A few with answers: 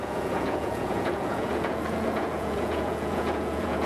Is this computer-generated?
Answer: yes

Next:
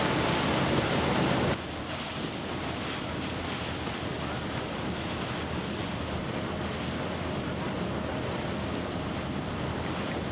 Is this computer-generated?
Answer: no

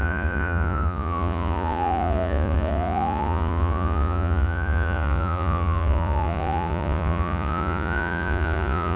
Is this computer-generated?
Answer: yes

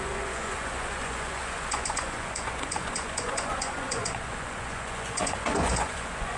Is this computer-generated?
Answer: yes